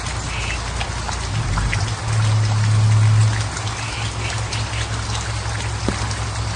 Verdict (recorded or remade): recorded